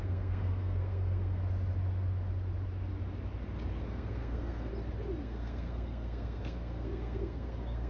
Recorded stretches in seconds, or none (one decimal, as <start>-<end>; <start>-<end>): 1.4-3.7; 4.7-5.2